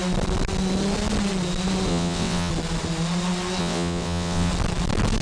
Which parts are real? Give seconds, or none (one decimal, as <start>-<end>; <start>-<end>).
0.0-1.9; 2.5-3.6; 4.5-5.2